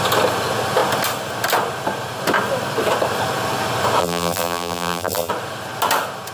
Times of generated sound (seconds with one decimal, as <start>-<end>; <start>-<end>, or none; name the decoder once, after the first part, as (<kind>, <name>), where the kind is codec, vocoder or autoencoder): 4.0-5.3 (vocoder, BigVGAN v2)